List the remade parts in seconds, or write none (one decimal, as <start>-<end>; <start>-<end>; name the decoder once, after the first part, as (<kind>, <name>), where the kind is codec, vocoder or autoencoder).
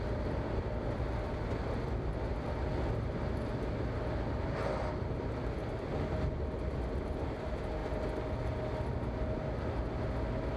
none